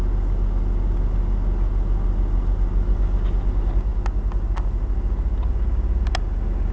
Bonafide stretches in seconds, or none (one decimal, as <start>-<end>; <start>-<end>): 0.0-6.7